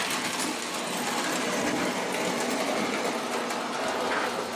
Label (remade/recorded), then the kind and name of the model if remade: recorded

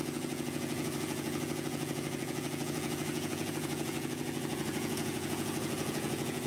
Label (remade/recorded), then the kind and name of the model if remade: remade, vocoder, Vocos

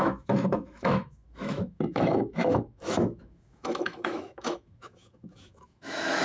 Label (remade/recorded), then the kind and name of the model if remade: remade, autoencoder, DAC-VAE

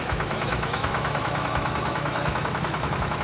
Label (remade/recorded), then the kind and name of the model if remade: remade, autoencoder, DAC-VAE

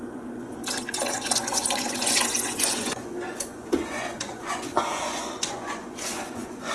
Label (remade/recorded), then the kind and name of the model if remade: remade, vocoder, Vocos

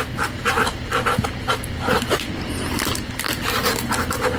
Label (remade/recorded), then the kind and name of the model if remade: recorded